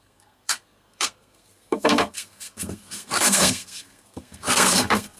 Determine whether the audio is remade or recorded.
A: remade